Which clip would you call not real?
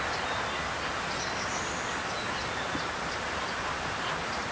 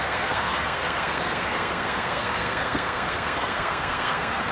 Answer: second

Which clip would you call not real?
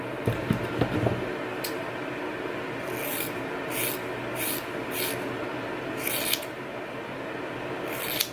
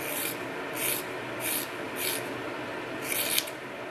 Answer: second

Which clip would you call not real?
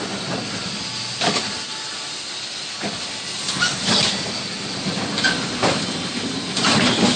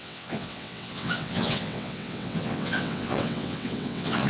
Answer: second